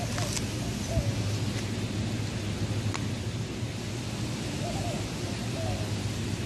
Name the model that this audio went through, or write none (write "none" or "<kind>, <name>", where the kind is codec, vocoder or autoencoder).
none